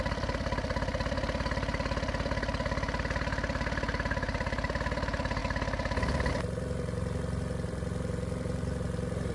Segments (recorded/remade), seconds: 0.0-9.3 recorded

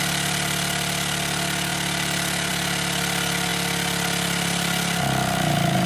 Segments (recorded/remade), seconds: 0.0-5.9 recorded

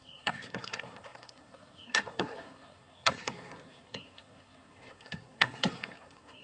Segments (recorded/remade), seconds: 0.0-6.4 remade

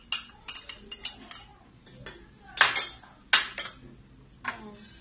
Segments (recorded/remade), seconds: 0.0-5.0 recorded

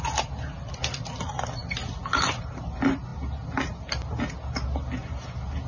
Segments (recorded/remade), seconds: 0.0-5.7 recorded

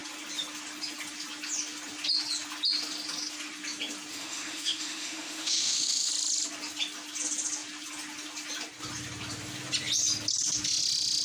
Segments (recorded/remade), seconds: 0.0-4.1 recorded; 4.1-6.1 remade; 6.1-11.2 recorded

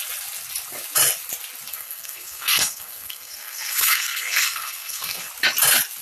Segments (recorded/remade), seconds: 0.0-1.7 recorded; 1.7-5.3 remade; 5.3-6.0 recorded